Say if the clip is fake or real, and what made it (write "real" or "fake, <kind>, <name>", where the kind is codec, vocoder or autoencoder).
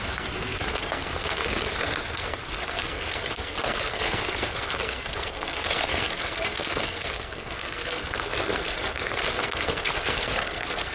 fake, codec, SNAC